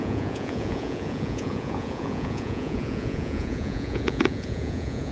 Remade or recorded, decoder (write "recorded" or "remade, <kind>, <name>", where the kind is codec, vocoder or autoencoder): remade, vocoder, Vocos